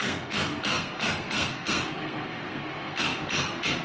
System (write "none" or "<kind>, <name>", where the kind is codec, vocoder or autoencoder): codec, SNAC